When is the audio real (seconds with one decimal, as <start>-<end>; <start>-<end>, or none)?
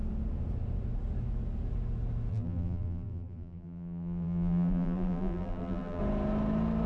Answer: 0.0-2.3; 6.0-6.9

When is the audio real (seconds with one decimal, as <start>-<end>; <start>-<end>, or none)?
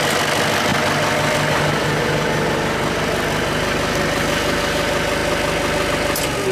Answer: 0.0-6.5